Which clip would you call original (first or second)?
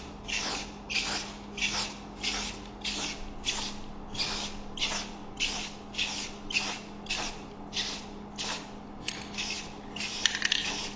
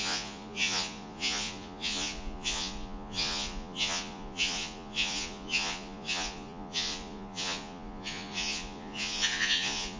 first